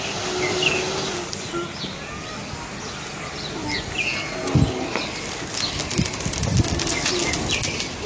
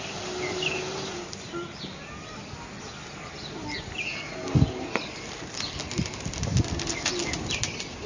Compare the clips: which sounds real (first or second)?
first